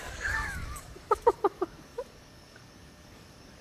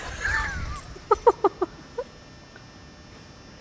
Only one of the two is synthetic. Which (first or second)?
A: first